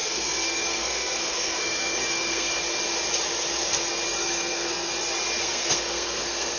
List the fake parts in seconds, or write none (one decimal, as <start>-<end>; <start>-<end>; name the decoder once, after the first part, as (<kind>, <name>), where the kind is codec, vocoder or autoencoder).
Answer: 0.0-2.6 (codec, SNAC); 4.2-4.9; 5.4-6.6